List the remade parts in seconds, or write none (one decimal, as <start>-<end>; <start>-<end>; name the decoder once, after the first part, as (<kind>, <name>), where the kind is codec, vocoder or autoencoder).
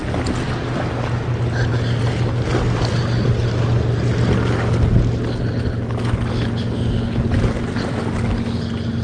none